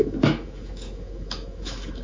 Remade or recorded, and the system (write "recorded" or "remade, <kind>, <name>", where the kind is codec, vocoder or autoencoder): remade, autoencoder, DAC-VAE